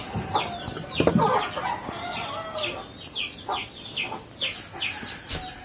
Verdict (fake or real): real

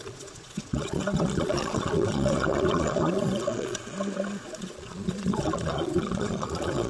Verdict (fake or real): fake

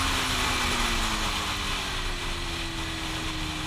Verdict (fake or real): real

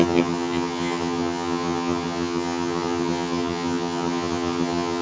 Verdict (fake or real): fake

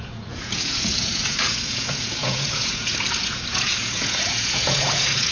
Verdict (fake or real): fake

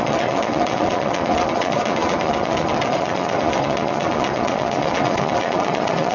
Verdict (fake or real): fake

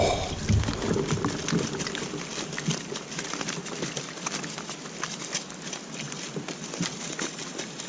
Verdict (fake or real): real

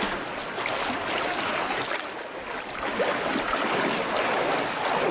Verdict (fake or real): real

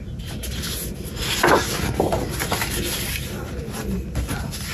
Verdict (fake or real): real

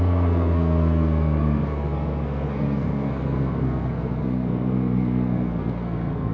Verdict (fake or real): fake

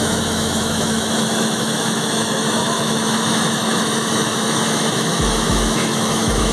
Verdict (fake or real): fake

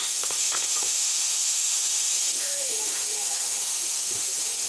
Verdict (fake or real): fake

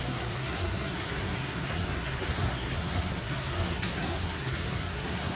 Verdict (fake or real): fake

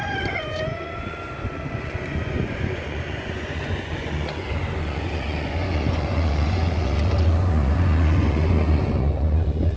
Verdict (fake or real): fake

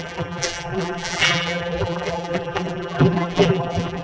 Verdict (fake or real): fake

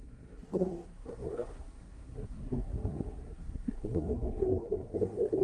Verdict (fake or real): fake